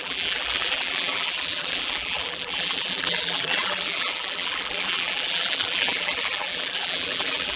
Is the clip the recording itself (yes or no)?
no